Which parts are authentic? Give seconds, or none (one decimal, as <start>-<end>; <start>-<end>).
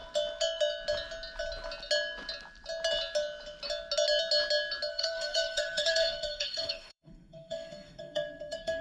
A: 0.0-4.9